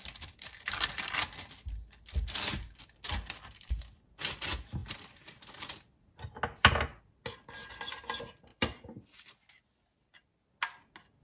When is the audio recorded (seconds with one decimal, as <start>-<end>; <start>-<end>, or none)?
0.0-4.8; 6.1-8.5; 9.5-11.2